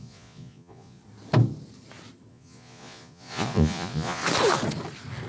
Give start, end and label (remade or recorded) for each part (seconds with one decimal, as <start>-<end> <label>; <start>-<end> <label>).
0.0-1.0 remade; 1.0-2.3 recorded; 2.3-4.2 remade; 4.2-5.3 recorded